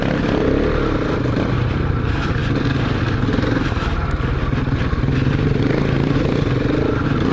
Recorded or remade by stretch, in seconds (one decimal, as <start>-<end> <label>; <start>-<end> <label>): 0.0-7.3 recorded

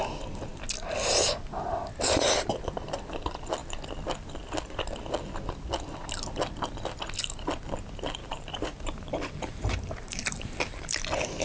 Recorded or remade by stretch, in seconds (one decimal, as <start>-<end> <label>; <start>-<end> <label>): 0.0-8.2 recorded; 8.2-11.0 remade; 11.0-11.4 recorded

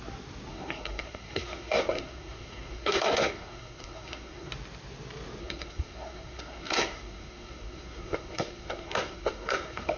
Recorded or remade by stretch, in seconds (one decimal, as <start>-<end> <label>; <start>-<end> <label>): 0.0-0.5 recorded; 0.5-4.5 remade; 4.5-5.4 recorded; 5.4-10.0 remade

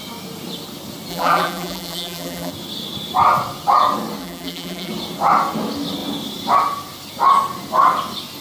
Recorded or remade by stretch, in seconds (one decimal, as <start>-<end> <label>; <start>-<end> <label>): 0.0-1.1 recorded; 1.1-2.5 remade; 2.5-4.2 recorded; 4.2-4.9 remade; 4.9-8.4 recorded

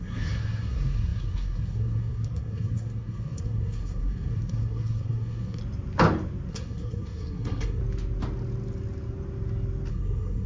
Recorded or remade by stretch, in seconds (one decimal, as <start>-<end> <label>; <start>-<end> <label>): 0.0-5.6 remade; 5.6-6.5 recorded; 6.5-7.8 remade; 7.8-9.9 recorded; 9.9-10.5 remade

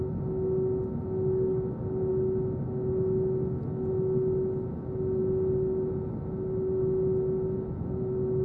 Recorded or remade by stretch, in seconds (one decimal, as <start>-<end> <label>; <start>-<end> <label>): 0.0-8.4 recorded

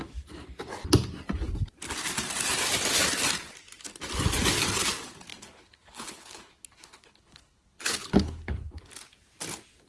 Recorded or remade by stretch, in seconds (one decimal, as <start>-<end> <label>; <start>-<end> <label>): 0.0-5.3 recorded; 5.3-8.8 remade; 8.8-9.9 recorded

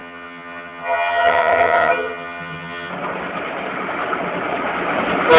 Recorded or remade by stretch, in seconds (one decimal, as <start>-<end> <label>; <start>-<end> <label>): 0.0-2.9 remade; 2.9-5.4 recorded